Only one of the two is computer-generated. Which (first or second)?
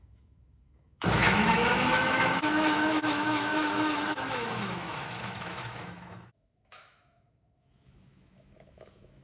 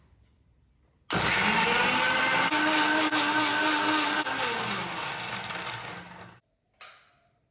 first